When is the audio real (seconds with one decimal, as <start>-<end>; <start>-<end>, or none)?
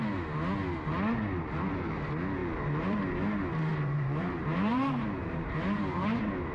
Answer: 0.0-2.4; 3.0-3.7